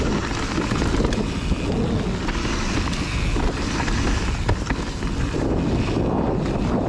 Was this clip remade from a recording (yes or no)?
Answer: no